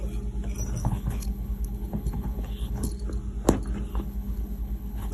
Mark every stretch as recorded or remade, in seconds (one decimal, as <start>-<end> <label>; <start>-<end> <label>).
0.0-0.8 recorded; 0.8-2.9 remade; 2.9-3.9 recorded; 3.9-5.1 remade